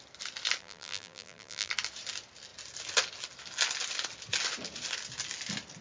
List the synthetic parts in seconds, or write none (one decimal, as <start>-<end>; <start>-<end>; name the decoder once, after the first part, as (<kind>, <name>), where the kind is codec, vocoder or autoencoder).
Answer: 0.6-1.7 (vocoder, BigVGAN v2)